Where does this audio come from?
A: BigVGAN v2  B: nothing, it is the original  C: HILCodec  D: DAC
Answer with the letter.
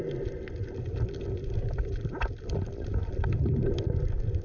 B